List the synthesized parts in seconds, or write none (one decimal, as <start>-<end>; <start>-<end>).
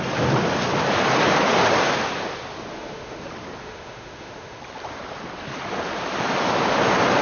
2.7-3.2; 3.6-4.6